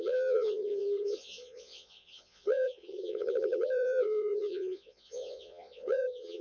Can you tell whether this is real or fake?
fake